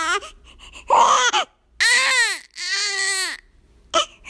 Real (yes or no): yes